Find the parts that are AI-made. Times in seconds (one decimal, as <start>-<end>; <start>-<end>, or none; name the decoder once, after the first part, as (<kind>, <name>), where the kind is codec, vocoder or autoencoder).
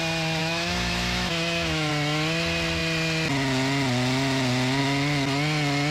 0.4-1.9 (autoencoder, DAC-VAE)